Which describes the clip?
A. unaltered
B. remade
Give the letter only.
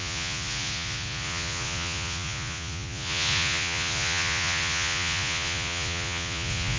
B